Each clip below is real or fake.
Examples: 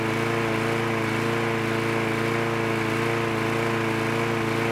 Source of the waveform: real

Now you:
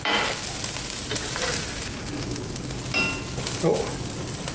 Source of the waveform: real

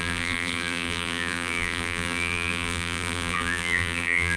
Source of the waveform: fake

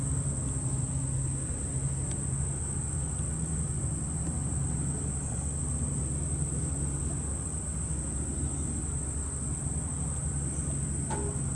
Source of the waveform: real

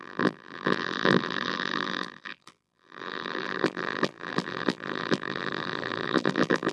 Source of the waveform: fake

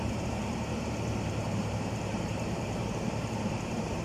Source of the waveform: fake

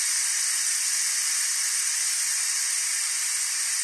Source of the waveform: real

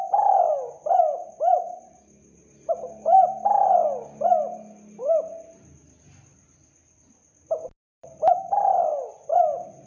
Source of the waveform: real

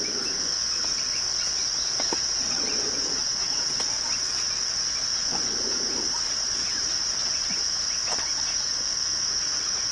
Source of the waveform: fake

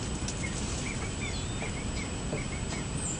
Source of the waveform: real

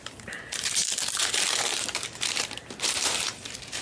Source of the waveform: fake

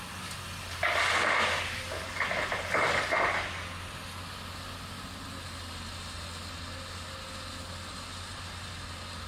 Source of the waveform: real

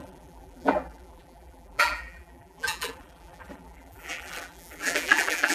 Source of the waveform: fake